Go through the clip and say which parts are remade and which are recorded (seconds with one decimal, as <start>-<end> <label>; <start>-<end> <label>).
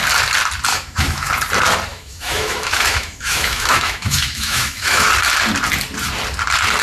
0.0-0.7 recorded; 0.7-1.3 remade; 1.3-1.9 recorded; 1.9-5.1 remade; 5.1-6.8 recorded